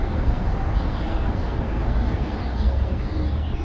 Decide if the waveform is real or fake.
fake